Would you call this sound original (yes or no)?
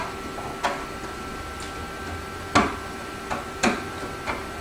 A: yes